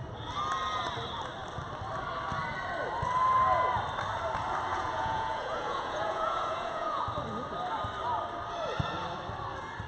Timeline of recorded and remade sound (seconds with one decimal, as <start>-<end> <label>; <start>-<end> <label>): 0.0-4.7 recorded; 4.7-7.0 remade; 7.0-9.9 recorded